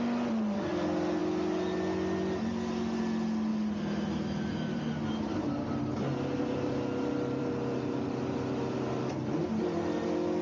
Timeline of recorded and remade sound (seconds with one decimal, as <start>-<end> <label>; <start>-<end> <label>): 0.0-10.4 recorded